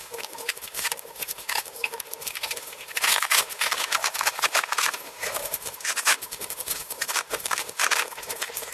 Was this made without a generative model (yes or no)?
no